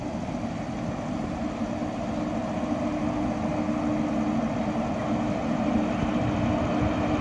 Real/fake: real